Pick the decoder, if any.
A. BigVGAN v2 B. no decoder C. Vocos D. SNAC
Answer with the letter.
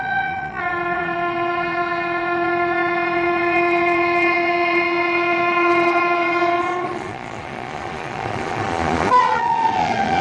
C